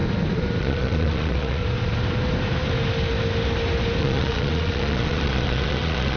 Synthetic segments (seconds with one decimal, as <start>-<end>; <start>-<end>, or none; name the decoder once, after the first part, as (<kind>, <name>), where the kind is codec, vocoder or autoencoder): 0.6-1.6 (vocoder, Vocos); 4.0-6.2